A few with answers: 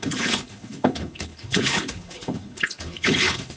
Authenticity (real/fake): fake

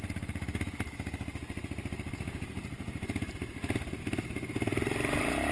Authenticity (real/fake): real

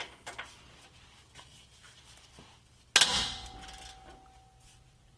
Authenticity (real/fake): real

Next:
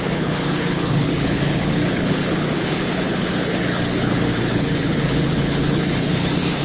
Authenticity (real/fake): fake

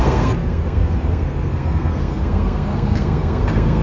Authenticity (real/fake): fake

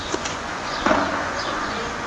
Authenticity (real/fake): fake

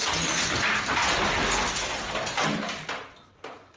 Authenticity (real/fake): real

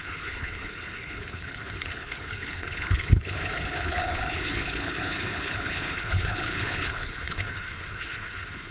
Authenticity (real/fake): fake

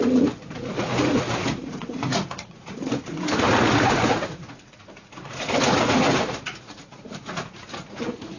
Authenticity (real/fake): fake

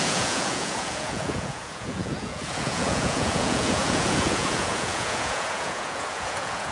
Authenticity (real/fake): fake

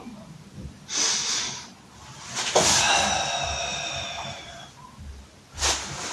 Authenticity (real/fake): real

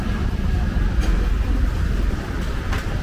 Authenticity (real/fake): fake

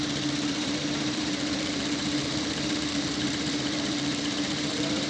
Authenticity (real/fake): fake